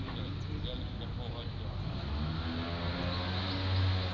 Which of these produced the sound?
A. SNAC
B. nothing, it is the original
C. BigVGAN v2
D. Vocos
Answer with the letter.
B